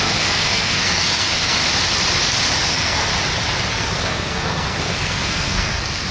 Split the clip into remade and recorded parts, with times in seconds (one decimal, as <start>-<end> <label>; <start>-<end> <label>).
0.0-1.6 remade; 1.6-2.7 recorded; 2.7-3.1 remade; 3.1-3.7 recorded; 3.7-6.1 remade